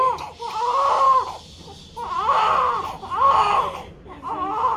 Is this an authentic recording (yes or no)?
yes